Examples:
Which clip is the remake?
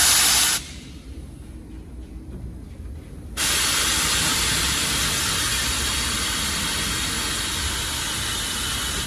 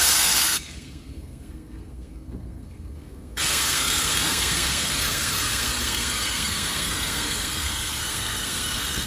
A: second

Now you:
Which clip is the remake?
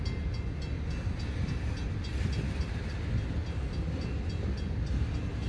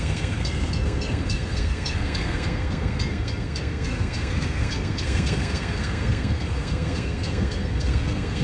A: second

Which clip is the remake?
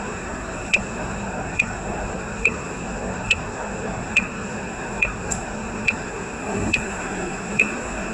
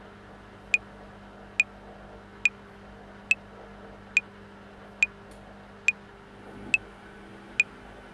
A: first